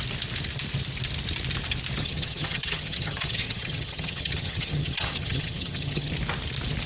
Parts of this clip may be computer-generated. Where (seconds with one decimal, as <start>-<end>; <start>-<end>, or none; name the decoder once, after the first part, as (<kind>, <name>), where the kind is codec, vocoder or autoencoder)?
2.0-6.1 (vocoder, HiFi-GAN)